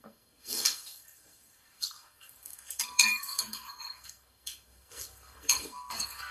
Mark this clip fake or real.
fake